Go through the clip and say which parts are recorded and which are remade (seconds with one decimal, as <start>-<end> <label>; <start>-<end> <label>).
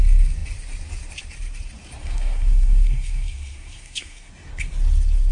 0.0-2.0 recorded; 2.0-4.3 remade; 4.3-5.3 recorded